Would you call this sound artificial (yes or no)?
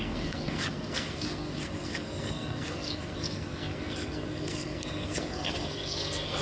yes